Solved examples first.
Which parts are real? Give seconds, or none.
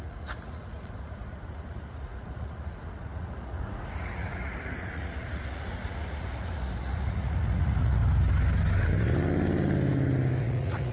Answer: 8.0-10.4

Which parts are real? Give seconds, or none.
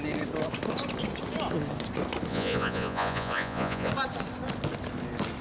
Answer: 0.0-2.3; 3.9-5.4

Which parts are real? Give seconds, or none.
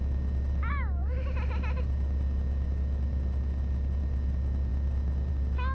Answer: 0.0-5.7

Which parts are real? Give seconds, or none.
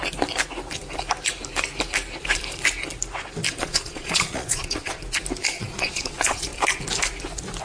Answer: 0.0-3.6; 5.0-5.6; 6.5-7.6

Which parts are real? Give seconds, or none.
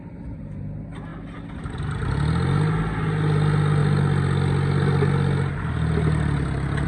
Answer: 0.0-6.9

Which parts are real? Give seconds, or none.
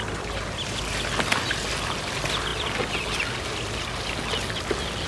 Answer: 0.0-5.1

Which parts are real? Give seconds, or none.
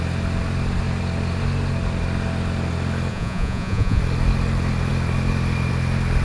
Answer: 0.0-3.1; 4.0-6.2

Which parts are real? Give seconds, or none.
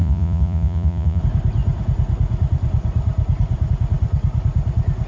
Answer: 1.2-5.1